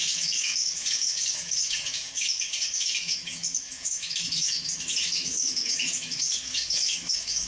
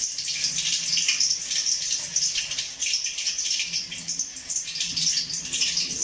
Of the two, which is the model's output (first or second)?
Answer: first